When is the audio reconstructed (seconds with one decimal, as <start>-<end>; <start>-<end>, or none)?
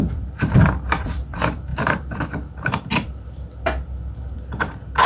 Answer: 0.0-5.1